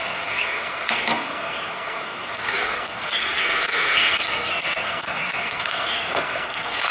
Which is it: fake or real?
fake